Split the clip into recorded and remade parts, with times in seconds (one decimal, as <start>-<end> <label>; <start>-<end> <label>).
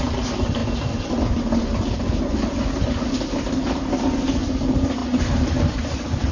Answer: 0.0-5.0 recorded; 5.0-6.3 remade